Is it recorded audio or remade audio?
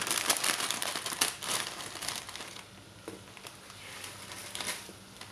recorded